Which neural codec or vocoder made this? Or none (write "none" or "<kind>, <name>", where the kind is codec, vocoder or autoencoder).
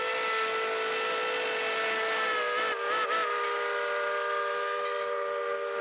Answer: none